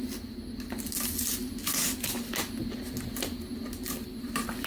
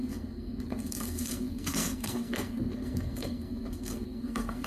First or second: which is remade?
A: second